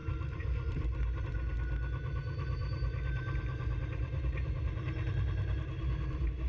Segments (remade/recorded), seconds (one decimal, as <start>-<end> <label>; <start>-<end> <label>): 0.0-1.2 remade; 1.2-2.6 recorded; 2.6-6.5 remade